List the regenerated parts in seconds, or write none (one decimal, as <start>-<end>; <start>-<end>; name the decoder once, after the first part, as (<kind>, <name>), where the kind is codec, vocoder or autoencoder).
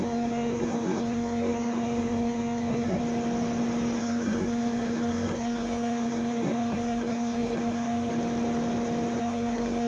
0.0-3.0 (codec, SNAC); 4.0-8.1; 9.2-9.9